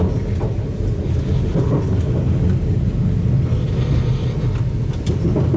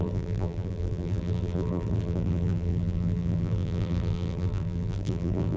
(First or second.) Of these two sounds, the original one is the first